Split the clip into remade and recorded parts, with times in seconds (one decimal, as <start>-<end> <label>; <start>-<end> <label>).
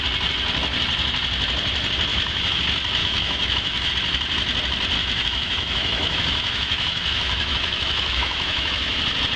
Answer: 0.0-2.1 recorded; 2.1-2.6 remade; 2.6-3.0 recorded; 3.0-3.9 remade; 3.9-5.0 recorded; 5.0-9.0 remade; 9.0-9.4 recorded